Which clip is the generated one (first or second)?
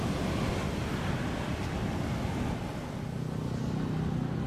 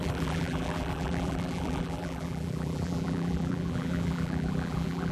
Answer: second